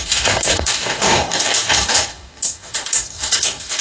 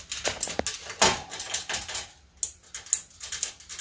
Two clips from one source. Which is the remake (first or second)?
first